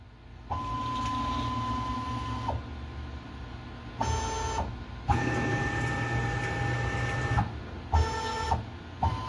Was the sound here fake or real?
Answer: real